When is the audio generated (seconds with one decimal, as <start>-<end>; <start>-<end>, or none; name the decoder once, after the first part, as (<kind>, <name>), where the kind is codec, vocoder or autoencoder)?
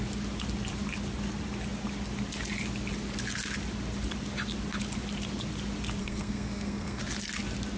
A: 6.0-7.0 (codec, SNAC)